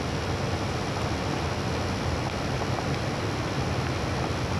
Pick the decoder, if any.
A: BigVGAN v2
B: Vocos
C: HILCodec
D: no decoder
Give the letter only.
D